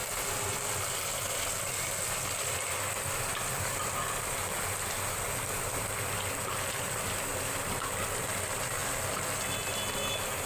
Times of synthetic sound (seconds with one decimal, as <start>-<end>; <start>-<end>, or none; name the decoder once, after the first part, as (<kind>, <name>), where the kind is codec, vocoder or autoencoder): none